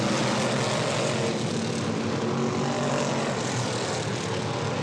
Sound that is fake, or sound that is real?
real